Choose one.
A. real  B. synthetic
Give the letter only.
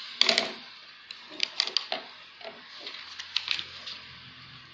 A